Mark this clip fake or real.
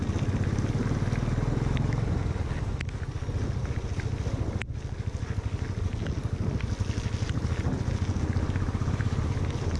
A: real